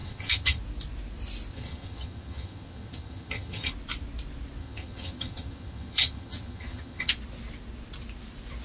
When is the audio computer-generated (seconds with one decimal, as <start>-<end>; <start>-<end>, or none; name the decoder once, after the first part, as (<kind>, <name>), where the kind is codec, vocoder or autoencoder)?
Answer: 0.0-0.6 (vocoder, HiFi-GAN); 1.5-3.7; 4.6-7.1